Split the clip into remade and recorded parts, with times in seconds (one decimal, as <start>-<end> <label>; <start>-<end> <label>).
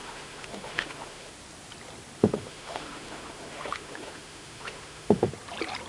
0.0-1.3 remade; 1.3-2.2 recorded; 2.2-5.3 remade; 5.3-5.9 recorded